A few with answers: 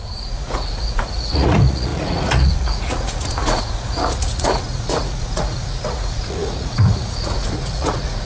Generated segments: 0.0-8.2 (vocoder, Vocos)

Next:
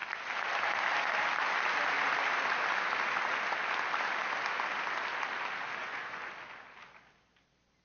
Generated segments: 5.8-6.3 (vocoder, Vocos)

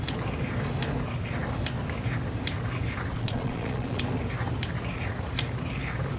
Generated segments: 3.1-4.0 (vocoder, Vocos)

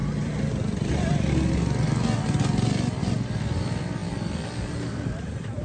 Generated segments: none

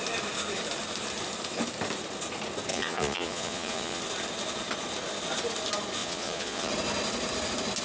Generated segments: 2.7-4.0 (vocoder, Vocos); 6.0-6.7